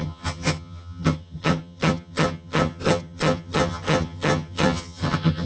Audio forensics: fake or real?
fake